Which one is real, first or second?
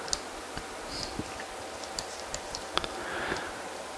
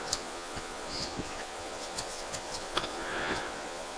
first